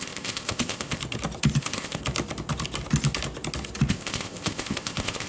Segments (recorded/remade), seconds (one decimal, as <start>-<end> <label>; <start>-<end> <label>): 0.0-1.0 remade; 1.0-1.6 recorded; 1.6-2.0 remade; 2.0-3.9 recorded; 3.9-5.3 remade